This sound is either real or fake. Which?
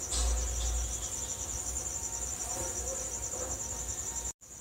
real